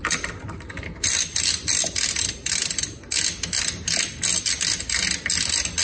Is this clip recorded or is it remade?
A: recorded